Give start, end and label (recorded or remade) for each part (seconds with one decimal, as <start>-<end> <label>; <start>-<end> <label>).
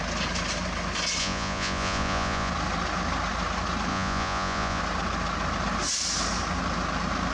0.0-1.2 recorded; 1.2-2.5 remade; 2.5-3.9 recorded; 3.9-4.8 remade; 4.8-7.3 recorded